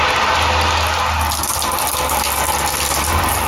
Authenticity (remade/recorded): recorded